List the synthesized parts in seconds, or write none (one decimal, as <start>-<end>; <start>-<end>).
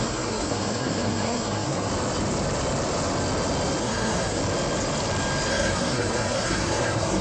0.0-1.9; 3.8-4.4; 5.5-7.2